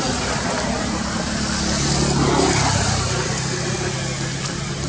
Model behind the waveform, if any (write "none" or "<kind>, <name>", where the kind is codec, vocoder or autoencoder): none